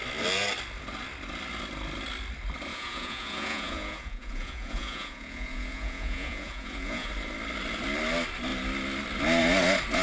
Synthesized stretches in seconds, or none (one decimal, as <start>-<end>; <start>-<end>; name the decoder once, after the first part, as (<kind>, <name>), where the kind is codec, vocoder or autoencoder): 2.7-7.1 (vocoder, Vocos)